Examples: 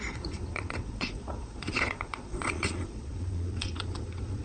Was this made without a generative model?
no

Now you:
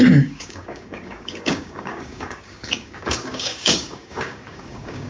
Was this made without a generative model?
no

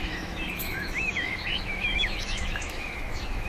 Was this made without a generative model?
no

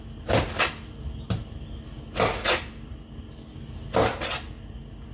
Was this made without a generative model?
yes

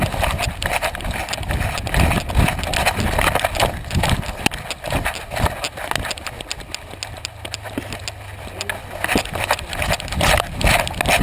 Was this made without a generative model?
yes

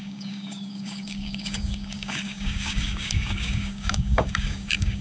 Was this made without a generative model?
no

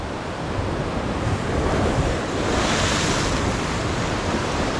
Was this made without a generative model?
yes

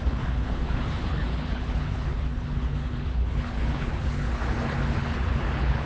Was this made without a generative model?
no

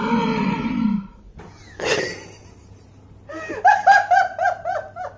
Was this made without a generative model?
yes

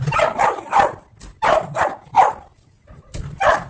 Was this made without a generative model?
yes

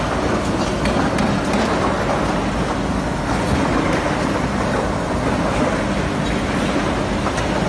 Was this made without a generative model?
yes